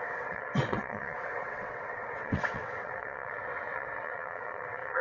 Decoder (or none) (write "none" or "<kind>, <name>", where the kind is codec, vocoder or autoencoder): vocoder, WaveNeXt